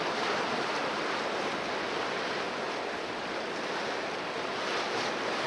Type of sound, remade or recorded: recorded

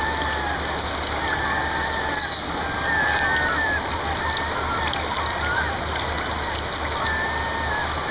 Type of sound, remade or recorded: recorded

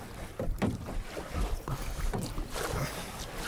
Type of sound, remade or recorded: recorded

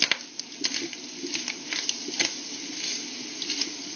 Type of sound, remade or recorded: recorded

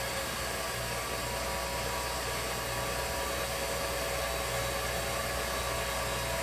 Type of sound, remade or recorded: recorded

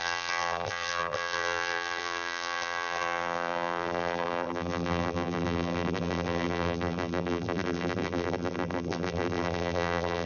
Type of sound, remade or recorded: remade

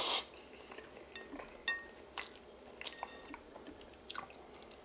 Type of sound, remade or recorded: recorded